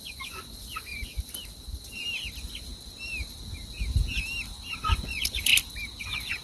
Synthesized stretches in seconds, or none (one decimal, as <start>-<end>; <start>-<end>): 0.0-0.9; 4.7-5.5; 6.0-6.4